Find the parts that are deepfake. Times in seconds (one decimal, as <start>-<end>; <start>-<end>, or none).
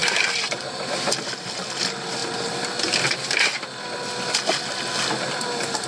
none